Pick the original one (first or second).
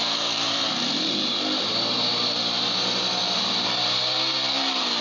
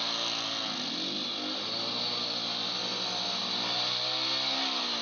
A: second